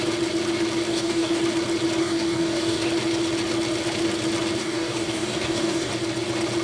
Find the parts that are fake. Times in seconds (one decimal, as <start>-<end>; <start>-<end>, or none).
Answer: 0.9-1.4; 2.0-2.9; 4.6-5.9